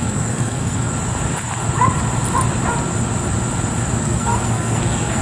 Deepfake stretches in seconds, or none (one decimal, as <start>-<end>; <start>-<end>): 0.0-0.9; 4.0-5.2